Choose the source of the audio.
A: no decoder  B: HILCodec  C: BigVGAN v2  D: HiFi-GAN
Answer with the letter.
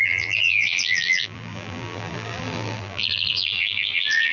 C